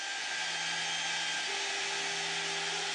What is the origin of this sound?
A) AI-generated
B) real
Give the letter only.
B